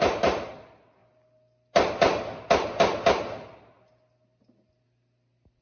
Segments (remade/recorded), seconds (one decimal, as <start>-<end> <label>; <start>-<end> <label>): 0.0-5.6 recorded